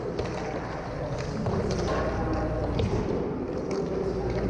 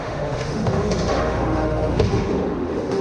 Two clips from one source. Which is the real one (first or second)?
first